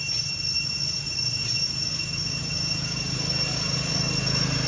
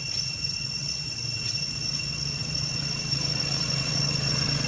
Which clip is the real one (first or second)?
first